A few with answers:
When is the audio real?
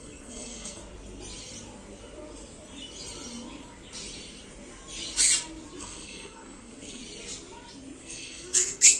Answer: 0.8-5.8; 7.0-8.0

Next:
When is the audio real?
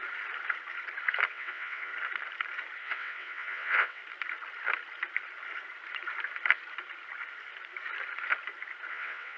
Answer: 0.0-1.3; 1.9-2.8; 4.0-8.9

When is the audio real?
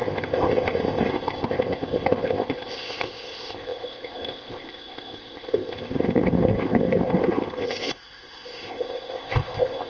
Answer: none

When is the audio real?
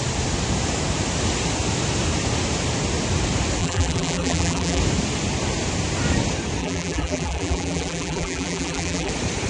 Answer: 0.0-3.6; 4.8-6.6; 9.1-9.5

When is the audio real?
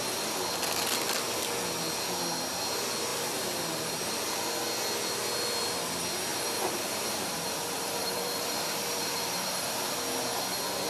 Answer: 0.0-3.1; 4.0-6.3; 10.0-10.9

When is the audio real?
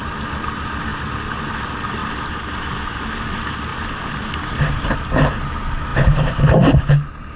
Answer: 0.0-2.0; 3.0-3.7; 4.9-5.9; 6.9-7.4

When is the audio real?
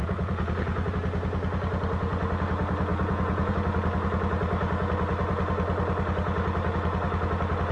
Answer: 0.9-2.9; 3.5-7.7